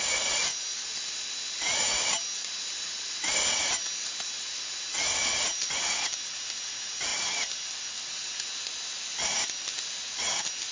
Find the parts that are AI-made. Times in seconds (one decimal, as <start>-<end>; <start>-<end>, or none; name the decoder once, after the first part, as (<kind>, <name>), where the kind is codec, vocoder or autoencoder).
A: none

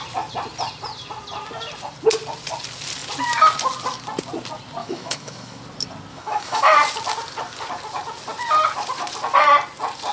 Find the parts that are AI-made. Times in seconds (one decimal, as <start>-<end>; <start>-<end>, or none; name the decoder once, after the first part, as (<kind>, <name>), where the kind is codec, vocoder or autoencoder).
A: 4.8-5.6 (autoencoder, DAC-VAE); 6.1-6.7

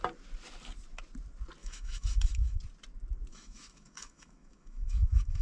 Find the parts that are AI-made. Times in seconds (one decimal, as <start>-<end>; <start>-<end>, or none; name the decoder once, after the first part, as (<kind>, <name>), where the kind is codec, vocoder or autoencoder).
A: 1.6-2.6 (autoencoder, DAC-VAE); 3.3-5.4

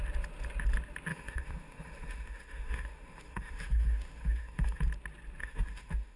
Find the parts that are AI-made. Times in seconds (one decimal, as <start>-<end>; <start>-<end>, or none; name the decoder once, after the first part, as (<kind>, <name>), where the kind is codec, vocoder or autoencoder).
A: 1.1-4.8 (autoencoder, DAC-VAE); 5.4-6.2

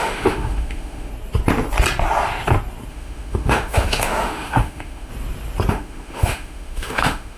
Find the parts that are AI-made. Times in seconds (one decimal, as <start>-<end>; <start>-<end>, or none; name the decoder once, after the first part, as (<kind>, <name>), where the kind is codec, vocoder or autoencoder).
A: 0.0-1.1 (autoencoder, DAC-VAE); 2.9-5.1; 5.7-7.4

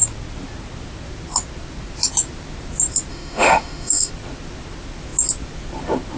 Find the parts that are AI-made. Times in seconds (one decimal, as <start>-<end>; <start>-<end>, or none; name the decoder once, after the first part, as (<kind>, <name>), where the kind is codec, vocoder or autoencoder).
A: 3.1-4.1 (autoencoder, DAC-VAE)

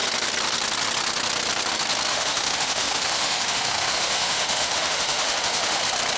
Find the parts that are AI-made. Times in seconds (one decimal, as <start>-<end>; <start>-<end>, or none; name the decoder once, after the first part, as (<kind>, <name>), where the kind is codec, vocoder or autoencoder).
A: 2.1-5.8 (autoencoder, DAC-VAE)